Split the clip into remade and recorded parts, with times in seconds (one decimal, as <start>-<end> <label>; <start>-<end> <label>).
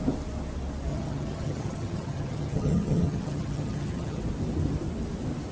0.0-0.9 recorded; 0.9-4.2 remade; 4.2-5.5 recorded